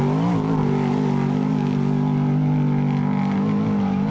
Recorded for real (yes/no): yes